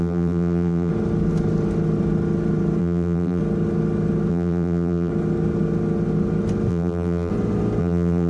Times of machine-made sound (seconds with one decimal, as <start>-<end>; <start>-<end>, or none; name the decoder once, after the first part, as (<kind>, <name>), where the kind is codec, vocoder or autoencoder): 0.0-0.9 (vocoder, BigVGAN v2); 2.8-3.4; 4.3-5.1; 6.7-7.3; 7.8-8.3

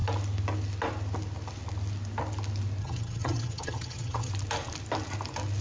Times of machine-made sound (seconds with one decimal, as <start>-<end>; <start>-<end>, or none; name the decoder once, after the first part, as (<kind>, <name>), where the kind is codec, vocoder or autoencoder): 2.8-4.3 (vocoder, HiFi-GAN)

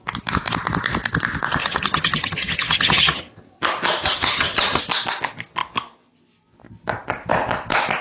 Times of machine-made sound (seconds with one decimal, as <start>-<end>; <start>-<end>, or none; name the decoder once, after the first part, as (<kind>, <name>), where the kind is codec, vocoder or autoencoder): 1.6-3.6 (vocoder, HiFi-GAN); 4.0-4.8

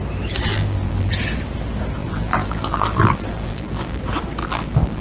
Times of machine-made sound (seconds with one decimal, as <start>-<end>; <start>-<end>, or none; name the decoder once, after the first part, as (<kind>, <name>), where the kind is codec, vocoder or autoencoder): 0.5-1.1 (vocoder, BigVGAN v2); 2.0-4.0; 4.4-5.0

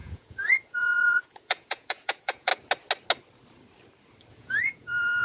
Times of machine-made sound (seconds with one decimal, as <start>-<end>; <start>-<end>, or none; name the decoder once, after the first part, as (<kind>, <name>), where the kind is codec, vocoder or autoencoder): 0.0-2.5 (vocoder, Vocos); 4.3-5.2